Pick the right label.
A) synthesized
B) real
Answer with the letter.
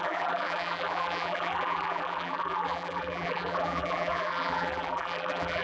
A